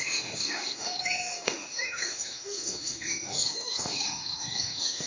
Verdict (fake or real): fake